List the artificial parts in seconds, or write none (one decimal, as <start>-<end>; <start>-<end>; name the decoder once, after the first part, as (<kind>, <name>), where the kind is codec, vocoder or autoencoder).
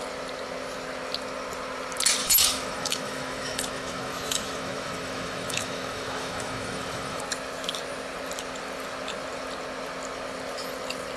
2.2-7.2 (autoencoder, DAC-VAE)